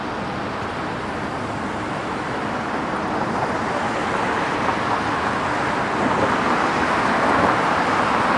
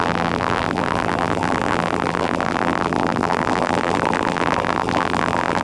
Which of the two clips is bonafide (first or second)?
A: first